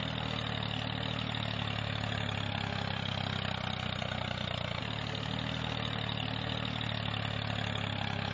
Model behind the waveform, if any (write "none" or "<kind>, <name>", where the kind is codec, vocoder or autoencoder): none